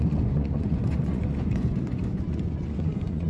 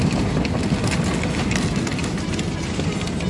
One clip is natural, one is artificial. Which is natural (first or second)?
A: second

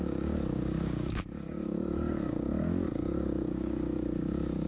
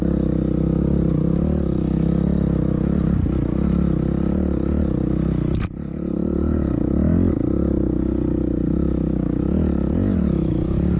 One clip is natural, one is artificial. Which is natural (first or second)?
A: second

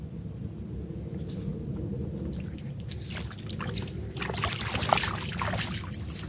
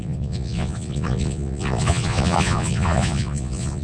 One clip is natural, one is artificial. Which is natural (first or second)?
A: first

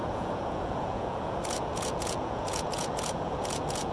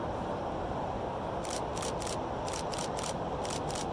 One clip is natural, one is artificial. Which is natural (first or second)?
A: second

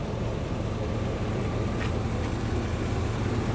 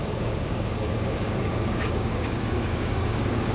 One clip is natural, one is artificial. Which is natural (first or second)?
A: first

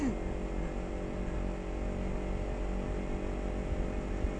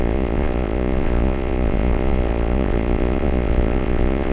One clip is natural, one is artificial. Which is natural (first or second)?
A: first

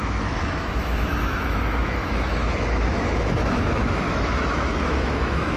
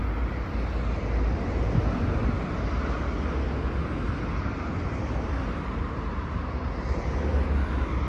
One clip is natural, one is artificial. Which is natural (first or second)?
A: second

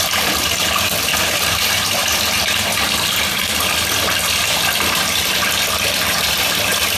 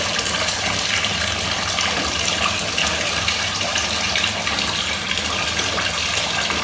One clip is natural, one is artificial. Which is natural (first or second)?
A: second